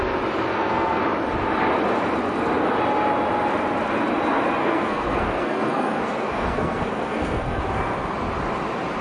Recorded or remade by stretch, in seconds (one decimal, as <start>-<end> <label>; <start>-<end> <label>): 0.0-0.5 recorded; 0.5-1.0 remade; 1.0-4.6 recorded; 4.6-7.6 remade; 7.6-9.0 recorded